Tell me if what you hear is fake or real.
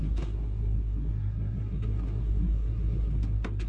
fake